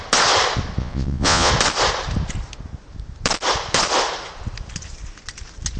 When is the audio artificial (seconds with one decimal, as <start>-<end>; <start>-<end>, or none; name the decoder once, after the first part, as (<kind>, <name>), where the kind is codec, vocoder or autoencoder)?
0.8-1.5 (vocoder, Vocos)